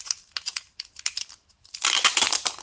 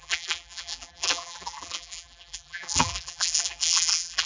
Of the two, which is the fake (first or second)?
second